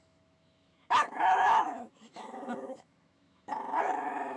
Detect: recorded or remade remade